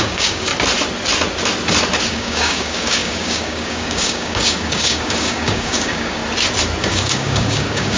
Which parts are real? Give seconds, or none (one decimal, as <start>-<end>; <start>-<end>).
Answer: 0.5-2.1; 6.2-6.8